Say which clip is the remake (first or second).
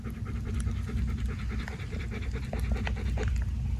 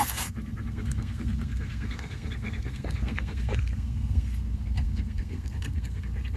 second